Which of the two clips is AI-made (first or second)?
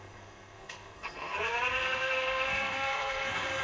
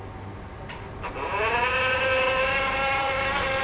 first